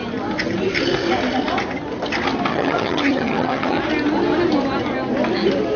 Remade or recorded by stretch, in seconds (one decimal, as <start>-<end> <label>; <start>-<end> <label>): 0.0-2.5 recorded; 2.5-3.8 remade; 3.8-5.8 recorded